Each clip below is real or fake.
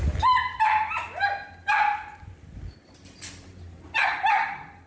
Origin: real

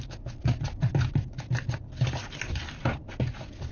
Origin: fake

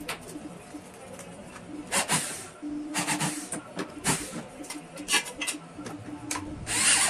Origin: real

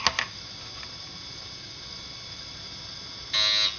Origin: real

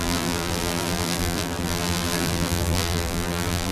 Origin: fake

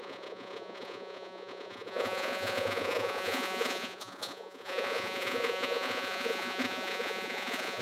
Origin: fake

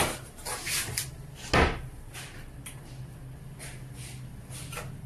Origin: real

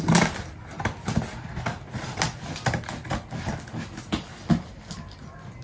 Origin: real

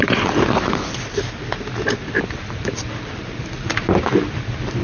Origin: real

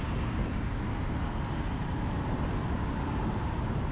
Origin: real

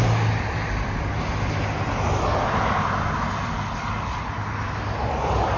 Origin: real